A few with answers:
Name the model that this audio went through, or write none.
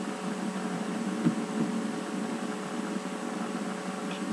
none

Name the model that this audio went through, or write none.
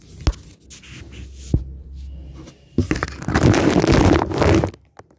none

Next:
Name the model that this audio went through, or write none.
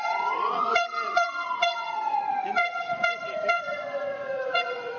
vocoder, Vocos